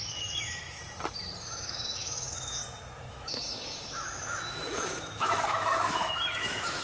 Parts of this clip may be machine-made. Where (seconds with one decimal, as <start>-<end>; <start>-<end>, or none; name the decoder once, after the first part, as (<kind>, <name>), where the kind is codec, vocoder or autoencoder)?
0.0-0.8 (autoencoder, DAC-VAE); 1.4-2.6; 3.1-6.8

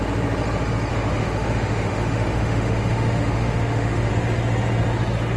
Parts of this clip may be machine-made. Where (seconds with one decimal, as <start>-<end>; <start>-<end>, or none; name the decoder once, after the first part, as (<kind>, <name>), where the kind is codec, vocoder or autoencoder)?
0.9-4.1 (autoencoder, DAC-VAE)

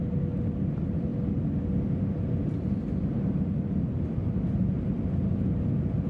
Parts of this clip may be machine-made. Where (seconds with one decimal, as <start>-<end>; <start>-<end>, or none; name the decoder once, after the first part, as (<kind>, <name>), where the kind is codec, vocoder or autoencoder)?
none

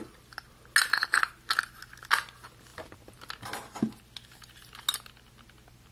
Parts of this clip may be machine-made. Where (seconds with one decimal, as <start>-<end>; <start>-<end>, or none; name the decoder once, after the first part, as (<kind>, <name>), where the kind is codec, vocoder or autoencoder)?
none

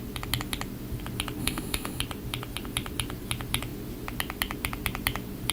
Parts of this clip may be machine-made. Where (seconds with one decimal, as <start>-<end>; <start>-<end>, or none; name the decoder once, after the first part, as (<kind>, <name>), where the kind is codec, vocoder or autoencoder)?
1.4-2.0 (autoencoder, DAC-VAE)

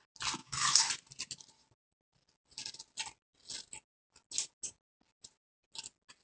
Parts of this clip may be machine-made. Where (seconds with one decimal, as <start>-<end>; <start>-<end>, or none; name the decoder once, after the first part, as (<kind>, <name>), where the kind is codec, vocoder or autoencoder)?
0.4-0.9 (autoencoder, DAC-VAE)

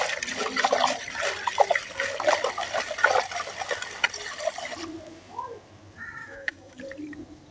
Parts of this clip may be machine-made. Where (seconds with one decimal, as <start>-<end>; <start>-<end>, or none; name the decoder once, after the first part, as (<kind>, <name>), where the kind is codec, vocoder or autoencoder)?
6.2-6.8 (autoencoder, DAC-VAE)

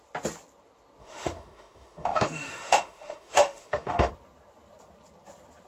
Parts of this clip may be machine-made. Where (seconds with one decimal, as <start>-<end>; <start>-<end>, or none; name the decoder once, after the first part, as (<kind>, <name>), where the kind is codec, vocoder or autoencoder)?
1.0-4.1 (autoencoder, DAC-VAE)